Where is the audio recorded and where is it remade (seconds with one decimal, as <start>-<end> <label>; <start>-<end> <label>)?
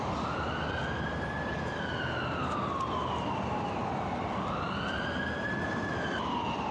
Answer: 0.0-6.7 recorded